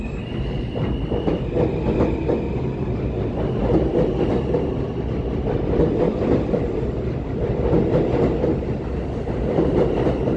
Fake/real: real